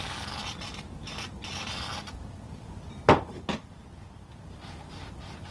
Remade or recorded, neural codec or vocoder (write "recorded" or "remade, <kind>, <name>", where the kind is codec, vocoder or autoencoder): recorded